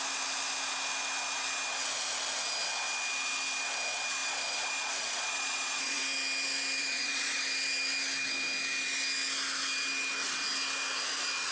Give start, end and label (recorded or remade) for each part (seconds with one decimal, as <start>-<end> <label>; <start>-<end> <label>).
0.0-4.2 recorded; 4.2-6.0 remade; 6.0-6.8 recorded; 6.8-7.4 remade; 7.4-11.5 recorded